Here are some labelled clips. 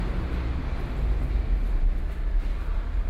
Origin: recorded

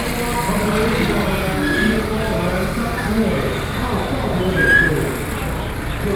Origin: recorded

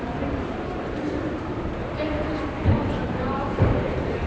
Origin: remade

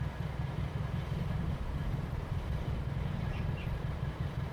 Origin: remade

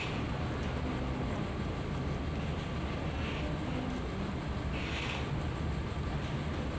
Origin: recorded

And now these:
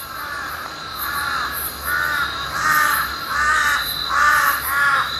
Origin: recorded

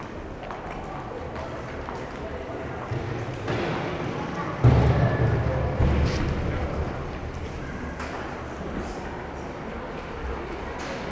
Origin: recorded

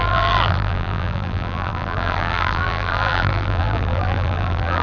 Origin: remade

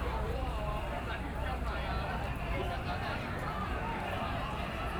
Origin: remade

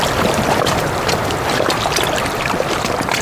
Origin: remade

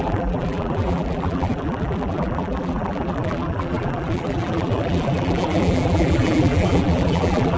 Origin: remade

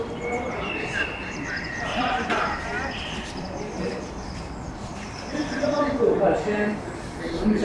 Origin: remade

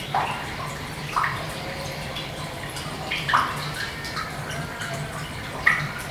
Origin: remade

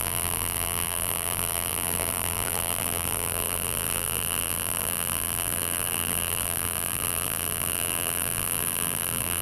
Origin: remade